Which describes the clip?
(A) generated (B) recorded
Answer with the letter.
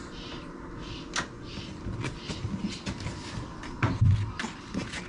B